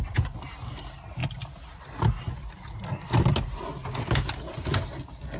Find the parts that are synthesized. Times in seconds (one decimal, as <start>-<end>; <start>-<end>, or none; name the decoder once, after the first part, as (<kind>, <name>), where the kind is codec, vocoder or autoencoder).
none